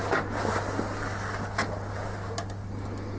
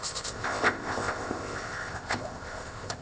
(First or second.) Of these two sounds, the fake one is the second